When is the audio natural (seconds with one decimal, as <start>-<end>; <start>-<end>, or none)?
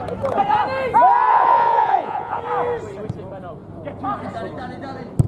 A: 0.0-1.3; 2.4-5.3